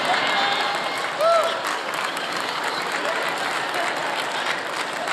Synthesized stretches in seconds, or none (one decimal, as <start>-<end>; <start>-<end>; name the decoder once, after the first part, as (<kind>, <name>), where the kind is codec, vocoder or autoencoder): 1.7-2.9 (codec, DAC)